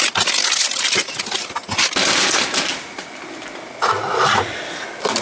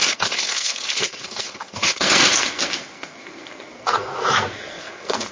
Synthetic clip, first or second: second